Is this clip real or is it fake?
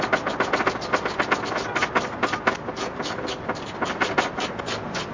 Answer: real